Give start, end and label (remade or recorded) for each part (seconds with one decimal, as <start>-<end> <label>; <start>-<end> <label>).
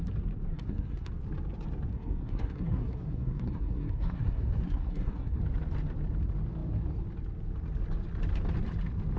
0.0-0.5 recorded; 0.5-1.1 remade; 1.1-1.9 recorded; 1.9-5.4 remade; 5.4-9.2 recorded